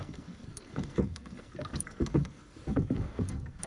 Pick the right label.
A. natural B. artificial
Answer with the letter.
B